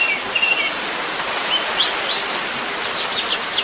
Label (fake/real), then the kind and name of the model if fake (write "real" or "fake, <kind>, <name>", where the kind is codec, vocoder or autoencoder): real